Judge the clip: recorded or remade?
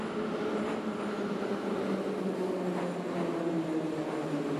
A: recorded